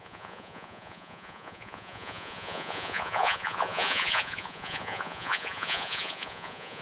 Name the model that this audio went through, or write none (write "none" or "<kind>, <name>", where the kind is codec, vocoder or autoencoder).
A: vocoder, Vocos